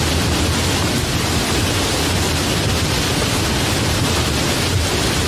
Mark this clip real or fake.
real